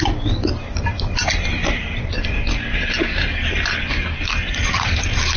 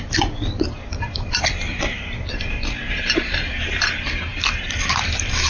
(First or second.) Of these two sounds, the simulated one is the second